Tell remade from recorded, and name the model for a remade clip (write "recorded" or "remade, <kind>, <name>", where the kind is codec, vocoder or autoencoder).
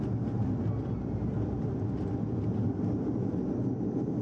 recorded